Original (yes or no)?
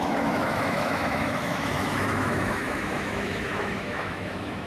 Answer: no